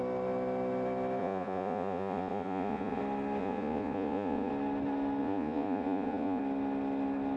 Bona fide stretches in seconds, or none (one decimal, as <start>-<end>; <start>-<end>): 0.0-1.2; 3.0-3.4; 4.5-5.2; 6.4-7.4